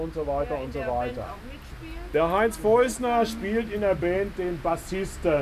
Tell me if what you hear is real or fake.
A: real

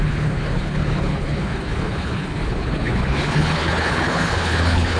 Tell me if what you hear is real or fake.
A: fake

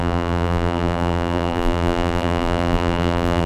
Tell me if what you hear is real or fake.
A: fake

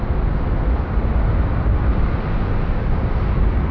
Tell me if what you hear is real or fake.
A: real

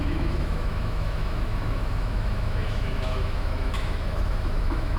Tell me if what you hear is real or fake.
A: fake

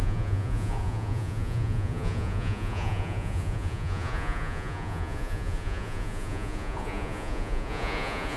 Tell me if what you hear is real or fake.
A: fake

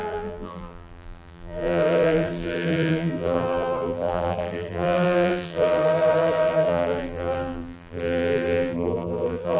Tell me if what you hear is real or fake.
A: fake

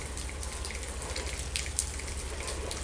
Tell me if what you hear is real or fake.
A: real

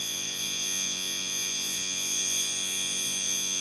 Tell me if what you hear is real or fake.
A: fake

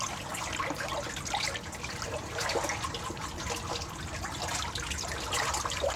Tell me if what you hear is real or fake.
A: real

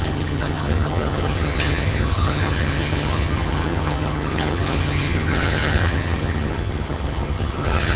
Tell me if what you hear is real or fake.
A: fake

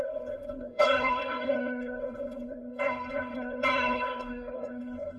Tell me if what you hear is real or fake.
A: fake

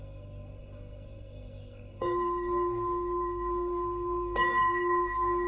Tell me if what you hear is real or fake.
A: fake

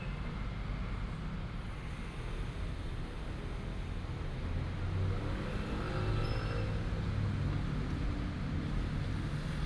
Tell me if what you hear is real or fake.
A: real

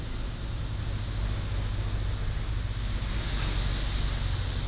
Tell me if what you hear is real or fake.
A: real